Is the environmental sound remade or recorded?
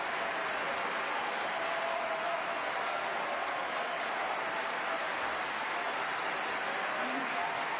recorded